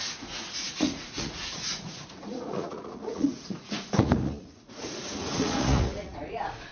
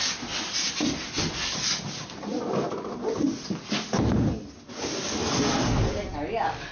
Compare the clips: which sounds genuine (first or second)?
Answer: second